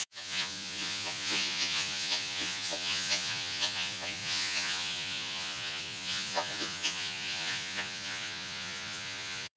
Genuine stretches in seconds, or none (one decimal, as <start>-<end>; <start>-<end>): none

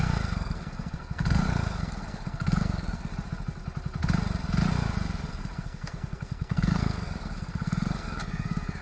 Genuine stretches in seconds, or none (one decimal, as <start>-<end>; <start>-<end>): 3.1-5.3

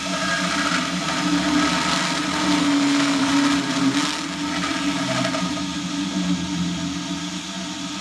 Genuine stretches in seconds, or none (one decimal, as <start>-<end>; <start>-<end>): 0.0-2.6; 3.3-8.0

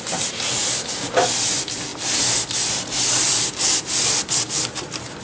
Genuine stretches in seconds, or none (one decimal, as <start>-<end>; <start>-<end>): 0.0-5.2

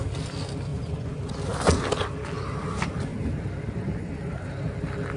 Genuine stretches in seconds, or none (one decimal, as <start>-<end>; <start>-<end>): 0.0-0.7; 1.2-5.2

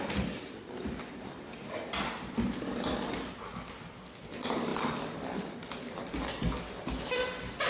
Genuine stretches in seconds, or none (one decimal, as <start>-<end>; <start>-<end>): 0.0-7.7